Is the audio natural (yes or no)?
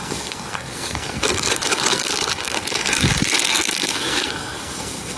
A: no